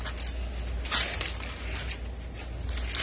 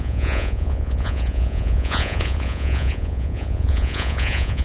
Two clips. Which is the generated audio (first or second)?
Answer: second